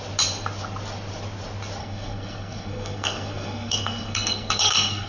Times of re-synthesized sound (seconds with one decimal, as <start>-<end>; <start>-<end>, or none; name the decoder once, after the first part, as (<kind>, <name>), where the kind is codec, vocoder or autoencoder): 1.8-5.1 (codec, SNAC)

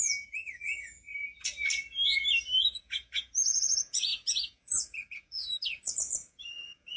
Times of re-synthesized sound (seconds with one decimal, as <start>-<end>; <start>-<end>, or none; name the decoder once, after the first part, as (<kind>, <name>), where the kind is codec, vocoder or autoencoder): 0.0-1.1 (vocoder, Vocos); 2.6-7.0

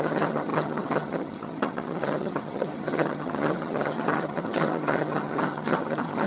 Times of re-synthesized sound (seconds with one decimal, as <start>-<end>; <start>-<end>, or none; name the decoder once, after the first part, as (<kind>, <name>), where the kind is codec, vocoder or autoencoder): 0.0-6.3 (vocoder, HiFi-GAN)

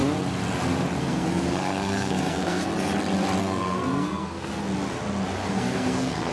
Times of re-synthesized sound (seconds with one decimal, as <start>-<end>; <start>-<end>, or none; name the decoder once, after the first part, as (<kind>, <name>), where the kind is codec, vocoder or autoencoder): 1.0-2.7 (codec, SNAC); 3.4-4.5; 5.5-6.3